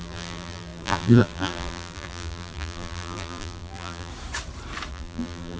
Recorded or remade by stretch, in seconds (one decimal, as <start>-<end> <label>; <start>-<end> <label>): 0.0-4.1 remade; 4.1-4.9 recorded; 4.9-5.6 remade